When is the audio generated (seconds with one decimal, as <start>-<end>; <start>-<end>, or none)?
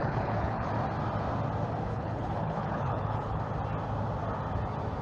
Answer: 0.0-0.7; 1.9-3.4